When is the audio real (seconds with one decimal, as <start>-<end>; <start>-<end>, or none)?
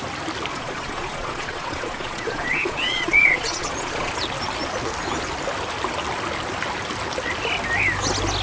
0.0-0.5; 4.1-8.4